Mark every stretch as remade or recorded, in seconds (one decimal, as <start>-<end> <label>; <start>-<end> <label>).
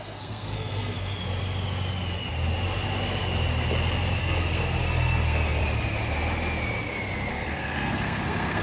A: 0.0-1.1 remade; 1.1-4.2 recorded; 4.2-5.6 remade; 5.6-7.3 recorded; 7.3-8.6 remade